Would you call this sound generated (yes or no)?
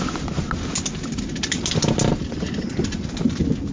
no